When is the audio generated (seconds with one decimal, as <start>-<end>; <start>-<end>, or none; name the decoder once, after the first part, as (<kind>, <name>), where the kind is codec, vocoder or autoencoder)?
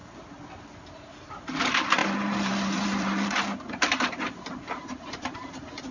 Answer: 2.0-5.5 (vocoder, BigVGAN v2)